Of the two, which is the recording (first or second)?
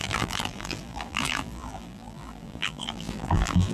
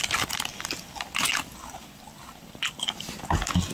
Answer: second